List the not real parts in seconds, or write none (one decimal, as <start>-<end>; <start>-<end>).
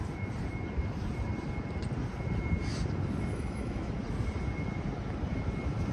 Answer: 3.3-3.9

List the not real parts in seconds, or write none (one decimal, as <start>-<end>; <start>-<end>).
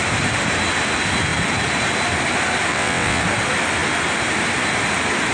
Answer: 2.7-3.2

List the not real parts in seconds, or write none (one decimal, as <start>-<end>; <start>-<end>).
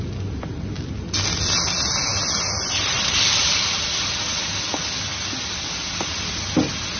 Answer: none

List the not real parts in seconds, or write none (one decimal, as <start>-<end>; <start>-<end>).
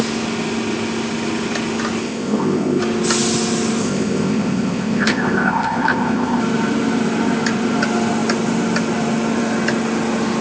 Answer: 2.0-2.8; 3.8-6.4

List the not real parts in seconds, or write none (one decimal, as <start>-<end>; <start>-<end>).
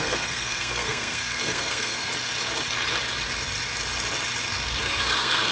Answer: 0.0-2.1; 4.8-5.5